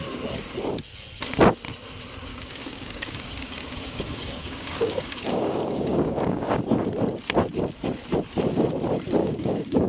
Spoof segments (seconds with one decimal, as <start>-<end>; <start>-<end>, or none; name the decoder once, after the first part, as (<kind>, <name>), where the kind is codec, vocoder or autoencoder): 2.3-6.6 (codec, DAC); 9.2-9.9

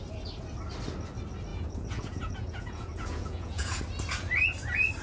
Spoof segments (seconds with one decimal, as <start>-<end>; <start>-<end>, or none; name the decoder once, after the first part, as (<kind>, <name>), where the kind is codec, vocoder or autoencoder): 1.5-3.8 (vocoder, Vocos)

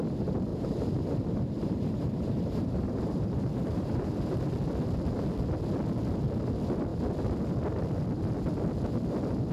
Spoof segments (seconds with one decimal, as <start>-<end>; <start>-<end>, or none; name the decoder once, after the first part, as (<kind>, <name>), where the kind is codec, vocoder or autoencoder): 0.5-4.4 (vocoder, BigVGAN v2)

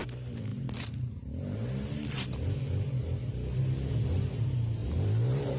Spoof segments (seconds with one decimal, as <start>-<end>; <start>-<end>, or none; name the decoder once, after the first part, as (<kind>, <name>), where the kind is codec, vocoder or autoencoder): 4.8-5.6 (vocoder, BigVGAN v2)

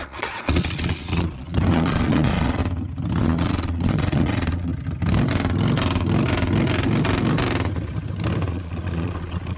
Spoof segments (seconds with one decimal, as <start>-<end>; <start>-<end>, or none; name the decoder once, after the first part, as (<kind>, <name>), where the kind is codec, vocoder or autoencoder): 0.0-2.6 (vocoder, Vocos); 3.2-4.7; 8.5-9.6

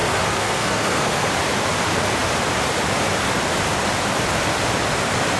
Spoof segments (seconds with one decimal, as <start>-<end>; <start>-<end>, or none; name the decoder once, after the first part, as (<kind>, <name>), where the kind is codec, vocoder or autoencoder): 0.0-1.3 (codec, SNAC)

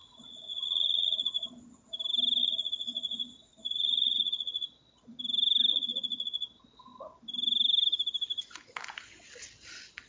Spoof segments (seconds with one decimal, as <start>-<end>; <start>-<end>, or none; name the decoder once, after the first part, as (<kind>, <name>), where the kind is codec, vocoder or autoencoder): 0.0-1.5 (vocoder, Vocos); 2.4-5.2; 5.7-6.6

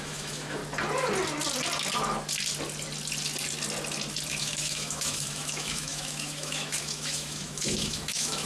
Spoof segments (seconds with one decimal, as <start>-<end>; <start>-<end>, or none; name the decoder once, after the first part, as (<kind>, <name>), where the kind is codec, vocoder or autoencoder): 0.0-0.6 (autoencoder, DAC-VAE); 4.3-8.5